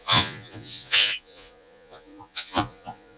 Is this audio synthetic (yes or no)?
yes